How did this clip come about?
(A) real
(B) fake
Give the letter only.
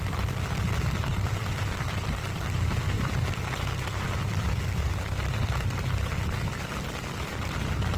B